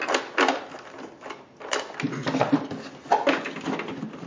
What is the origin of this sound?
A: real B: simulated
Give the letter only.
A